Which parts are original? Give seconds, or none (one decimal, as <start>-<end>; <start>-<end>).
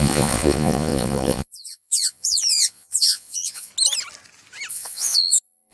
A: 3.7-4.7